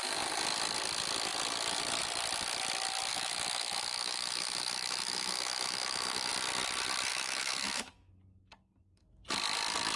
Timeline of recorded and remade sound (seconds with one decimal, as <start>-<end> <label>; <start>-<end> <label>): 0.0-3.1 recorded; 3.1-6.3 remade; 6.3-7.1 recorded; 7.1-8.1 remade; 8.1-10.0 recorded